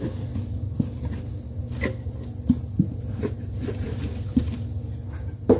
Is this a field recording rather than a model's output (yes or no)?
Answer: yes